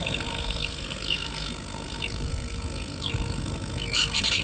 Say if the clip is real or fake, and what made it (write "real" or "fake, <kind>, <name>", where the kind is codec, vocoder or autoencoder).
fake, codec, SNAC